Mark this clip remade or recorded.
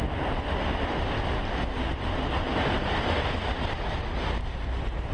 recorded